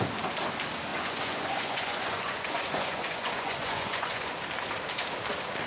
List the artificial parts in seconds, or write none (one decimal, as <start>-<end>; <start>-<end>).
0.9-4.3

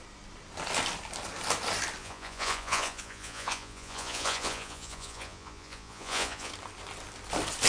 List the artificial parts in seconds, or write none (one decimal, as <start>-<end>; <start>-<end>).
2.0-6.5

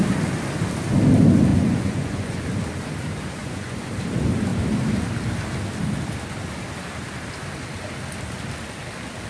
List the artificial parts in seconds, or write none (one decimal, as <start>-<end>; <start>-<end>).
1.5-2.4; 3.4-3.9

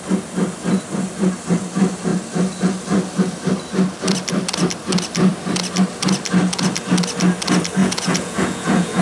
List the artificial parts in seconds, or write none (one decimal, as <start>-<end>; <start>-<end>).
7.8-9.0

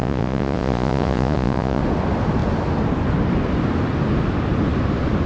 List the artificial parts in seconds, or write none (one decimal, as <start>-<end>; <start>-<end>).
0.0-1.8

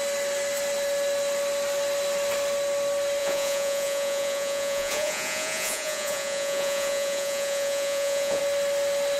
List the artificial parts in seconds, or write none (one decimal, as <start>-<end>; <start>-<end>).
3.2-8.4

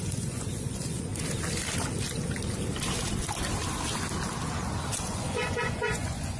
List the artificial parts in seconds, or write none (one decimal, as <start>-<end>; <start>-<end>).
0.0-1.1; 4.9-6.4

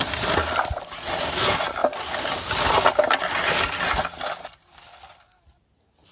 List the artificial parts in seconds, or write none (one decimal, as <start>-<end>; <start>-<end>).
none